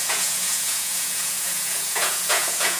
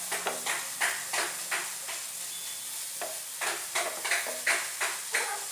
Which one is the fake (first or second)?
first